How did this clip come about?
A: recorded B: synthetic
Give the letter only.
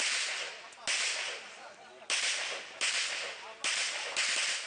A